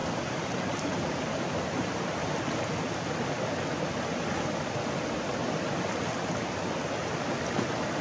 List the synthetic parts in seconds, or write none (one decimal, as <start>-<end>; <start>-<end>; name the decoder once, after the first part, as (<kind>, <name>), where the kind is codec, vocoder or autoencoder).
0.0-2.3 (vocoder, BigVGAN v2)